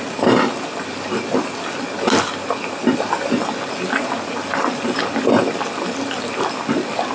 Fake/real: real